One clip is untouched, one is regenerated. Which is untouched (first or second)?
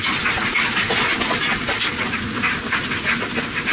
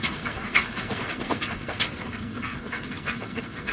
first